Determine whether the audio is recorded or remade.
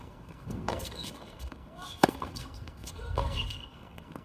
remade